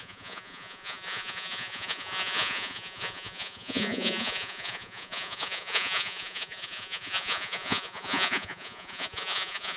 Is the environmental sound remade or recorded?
remade